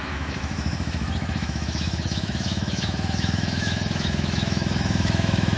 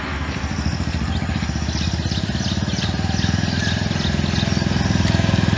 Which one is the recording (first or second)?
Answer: second